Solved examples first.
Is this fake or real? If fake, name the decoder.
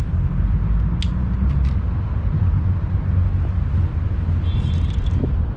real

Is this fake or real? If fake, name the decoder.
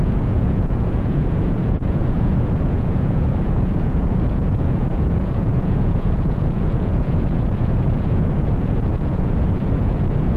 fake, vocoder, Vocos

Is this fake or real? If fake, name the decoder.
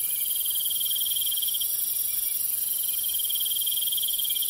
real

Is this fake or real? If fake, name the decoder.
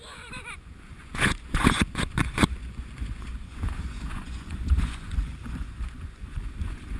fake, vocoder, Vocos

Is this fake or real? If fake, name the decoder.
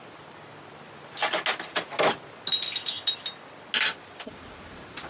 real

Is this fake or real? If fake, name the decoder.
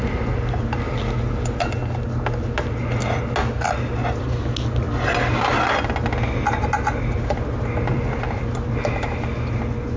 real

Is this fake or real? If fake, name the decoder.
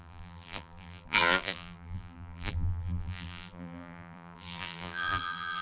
fake, vocoder, BigVGAN v2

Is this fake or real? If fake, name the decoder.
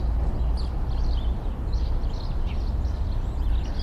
real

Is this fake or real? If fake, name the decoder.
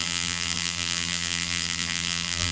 fake, vocoder, BigVGAN v2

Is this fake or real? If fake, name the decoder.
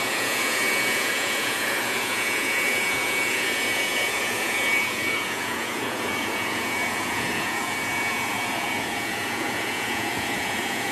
fake, vocoder, Vocos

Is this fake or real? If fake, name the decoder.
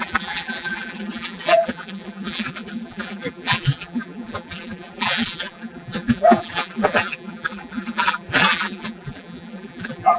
fake, vocoder, BigVGAN v2